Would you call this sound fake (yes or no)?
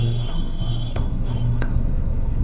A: yes